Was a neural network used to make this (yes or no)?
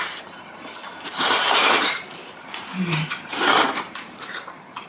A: yes